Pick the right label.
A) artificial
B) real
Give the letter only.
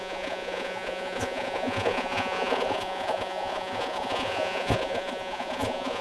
A